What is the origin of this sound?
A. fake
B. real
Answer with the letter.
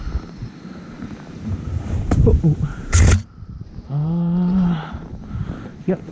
A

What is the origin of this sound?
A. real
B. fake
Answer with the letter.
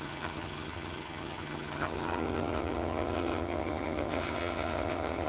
B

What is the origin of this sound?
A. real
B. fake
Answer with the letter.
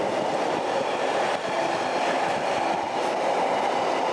A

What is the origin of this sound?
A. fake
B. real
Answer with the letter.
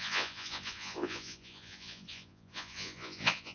A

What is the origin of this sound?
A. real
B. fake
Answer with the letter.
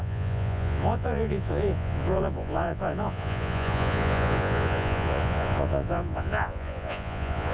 B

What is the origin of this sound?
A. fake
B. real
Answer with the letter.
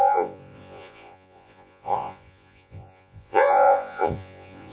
A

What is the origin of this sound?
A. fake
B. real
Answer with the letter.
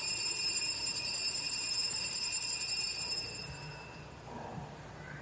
A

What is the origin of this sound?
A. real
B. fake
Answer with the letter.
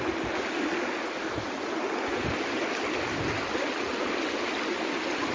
A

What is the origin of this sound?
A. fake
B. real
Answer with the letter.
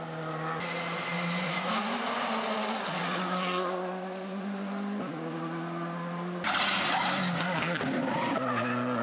B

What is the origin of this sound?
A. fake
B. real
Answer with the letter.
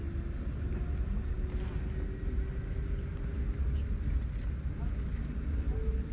B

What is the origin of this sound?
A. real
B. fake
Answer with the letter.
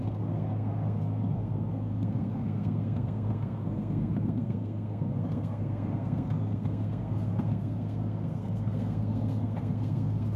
B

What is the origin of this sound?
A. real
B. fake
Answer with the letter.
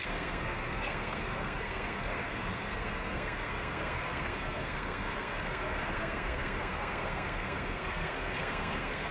B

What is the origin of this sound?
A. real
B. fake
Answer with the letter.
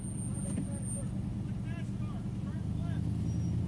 A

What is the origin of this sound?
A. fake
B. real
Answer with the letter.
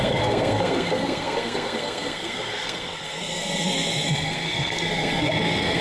A